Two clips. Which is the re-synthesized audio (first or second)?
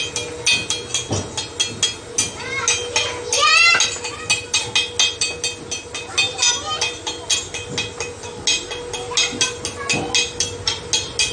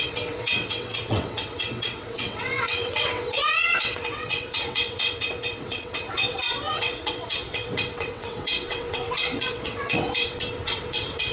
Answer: second